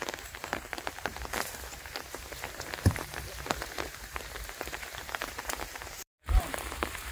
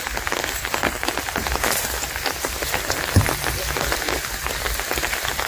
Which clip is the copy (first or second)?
first